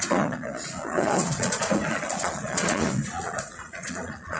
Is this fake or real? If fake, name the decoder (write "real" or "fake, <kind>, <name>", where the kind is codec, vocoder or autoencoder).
fake, vocoder, Vocos